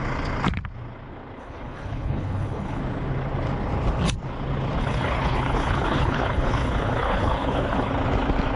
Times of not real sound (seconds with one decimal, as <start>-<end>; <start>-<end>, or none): 1.4-2.8; 4.8-7.9

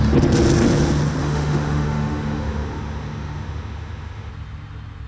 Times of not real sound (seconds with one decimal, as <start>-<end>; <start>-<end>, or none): 1.2-4.3

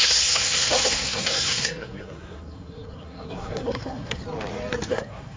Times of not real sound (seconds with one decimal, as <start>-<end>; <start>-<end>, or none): 0.0-4.2; 4.9-5.4

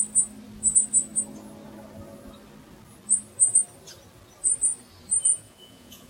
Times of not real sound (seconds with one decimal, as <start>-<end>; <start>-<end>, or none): 5.3-6.1

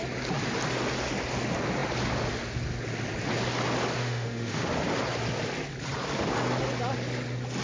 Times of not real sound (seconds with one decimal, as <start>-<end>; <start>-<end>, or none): 4.0-4.7

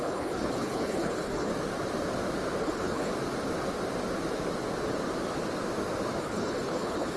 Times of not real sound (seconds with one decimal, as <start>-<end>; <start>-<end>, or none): 0.0-1.5; 2.6-3.1; 6.2-7.2